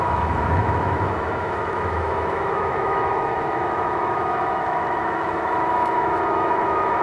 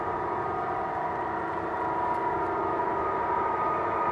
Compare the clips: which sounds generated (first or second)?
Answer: first